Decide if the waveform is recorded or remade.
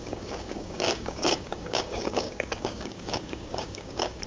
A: remade